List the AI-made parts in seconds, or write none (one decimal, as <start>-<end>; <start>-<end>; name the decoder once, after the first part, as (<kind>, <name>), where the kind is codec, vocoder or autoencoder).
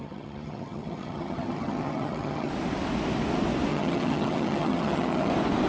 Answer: 0.0-2.5 (vocoder, HiFi-GAN); 3.7-5.3